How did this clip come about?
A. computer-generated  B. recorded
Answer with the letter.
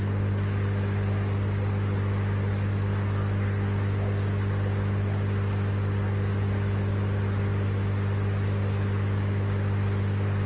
B